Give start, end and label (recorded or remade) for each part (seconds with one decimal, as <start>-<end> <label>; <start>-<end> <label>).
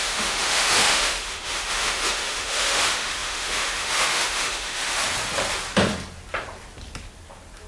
0.0-5.0 remade; 5.0-7.7 recorded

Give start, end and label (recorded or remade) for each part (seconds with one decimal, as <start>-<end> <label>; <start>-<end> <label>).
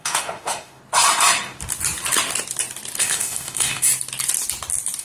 0.0-0.8 remade; 0.8-3.0 recorded; 3.0-3.9 remade; 3.9-5.0 recorded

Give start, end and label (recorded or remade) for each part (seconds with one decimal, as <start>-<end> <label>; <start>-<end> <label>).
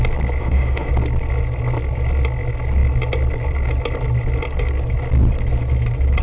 0.0-0.4 recorded; 0.4-0.9 remade; 0.9-6.2 recorded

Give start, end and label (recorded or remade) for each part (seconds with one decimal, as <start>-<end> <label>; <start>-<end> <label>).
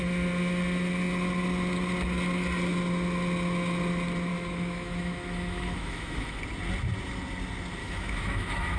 0.0-4.3 recorded; 4.3-6.4 remade; 6.4-7.8 recorded; 7.8-8.8 remade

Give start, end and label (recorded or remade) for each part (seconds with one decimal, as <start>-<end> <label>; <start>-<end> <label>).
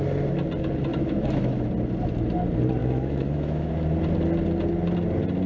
0.0-0.9 recorded; 0.9-1.7 remade; 1.7-2.8 recorded; 2.8-3.7 remade; 3.7-5.5 recorded